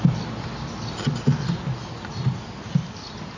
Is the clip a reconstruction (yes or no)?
no